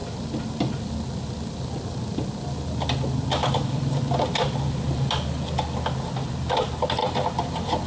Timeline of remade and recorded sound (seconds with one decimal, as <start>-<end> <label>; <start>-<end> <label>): 0.0-3.4 recorded; 3.4-4.0 remade; 4.0-7.0 recorded; 7.0-7.9 remade